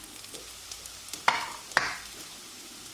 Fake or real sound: real